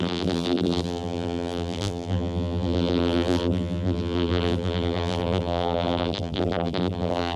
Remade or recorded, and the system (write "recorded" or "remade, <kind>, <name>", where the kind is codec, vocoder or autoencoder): remade, vocoder, BigVGAN v2